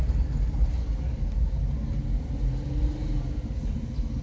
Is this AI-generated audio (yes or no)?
no